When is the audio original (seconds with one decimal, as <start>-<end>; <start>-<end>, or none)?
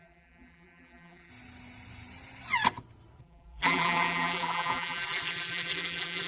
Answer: 1.3-3.2